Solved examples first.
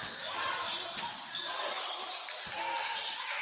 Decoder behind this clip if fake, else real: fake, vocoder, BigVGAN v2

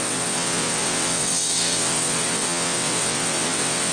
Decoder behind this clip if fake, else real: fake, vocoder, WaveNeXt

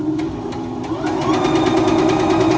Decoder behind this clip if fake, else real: real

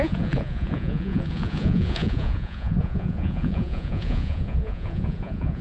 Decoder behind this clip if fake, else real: fake, vocoder, Vocos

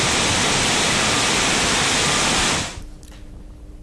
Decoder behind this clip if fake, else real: real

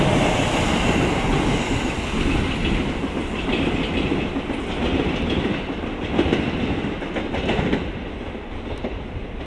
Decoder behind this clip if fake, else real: real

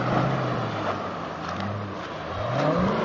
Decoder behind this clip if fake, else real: real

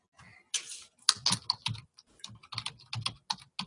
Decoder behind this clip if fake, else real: real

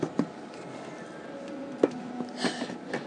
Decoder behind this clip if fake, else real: real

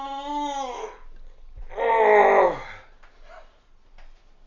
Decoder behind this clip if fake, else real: real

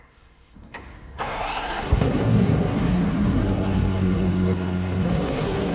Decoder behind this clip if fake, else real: fake, codec, SNAC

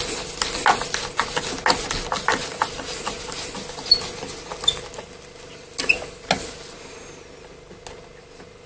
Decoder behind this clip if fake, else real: real